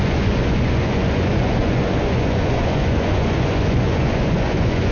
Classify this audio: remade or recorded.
remade